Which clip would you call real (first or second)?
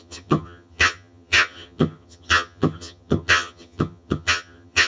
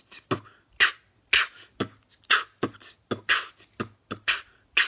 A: second